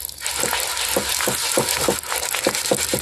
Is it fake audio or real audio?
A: real